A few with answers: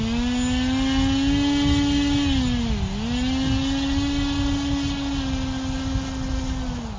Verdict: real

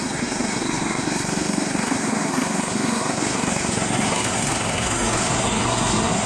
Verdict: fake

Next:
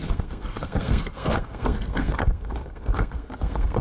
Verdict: fake